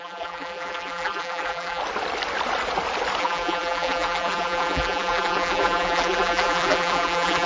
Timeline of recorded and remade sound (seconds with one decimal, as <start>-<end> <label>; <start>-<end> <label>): 0.0-1.8 remade; 1.8-3.2 recorded; 3.2-7.5 remade

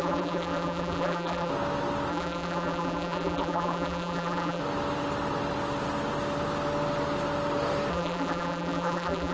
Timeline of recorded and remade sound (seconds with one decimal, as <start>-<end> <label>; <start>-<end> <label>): 0.0-1.5 remade; 1.5-2.1 recorded; 2.1-4.6 remade; 4.6-7.9 recorded; 7.9-9.3 remade

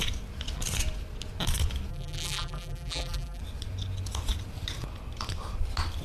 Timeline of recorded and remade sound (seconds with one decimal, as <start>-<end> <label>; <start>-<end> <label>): 0.0-1.9 recorded; 1.9-3.4 remade; 3.4-6.0 recorded

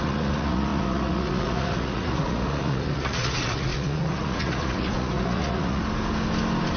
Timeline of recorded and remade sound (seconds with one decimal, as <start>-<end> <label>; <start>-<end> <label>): 0.0-5.8 remade; 5.8-6.8 recorded

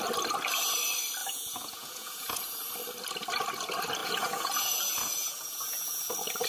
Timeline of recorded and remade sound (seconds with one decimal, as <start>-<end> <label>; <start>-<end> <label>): 0.0-1.2 recorded; 1.2-2.7 remade; 2.7-4.0 recorded; 4.0-6.1 remade; 6.1-6.5 recorded

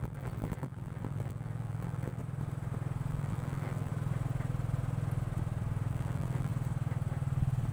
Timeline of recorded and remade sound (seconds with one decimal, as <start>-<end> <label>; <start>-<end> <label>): 0.0-2.2 remade; 2.2-3.1 recorded; 3.1-3.9 remade; 3.9-5.9 recorded; 5.9-6.5 remade; 6.5-7.7 recorded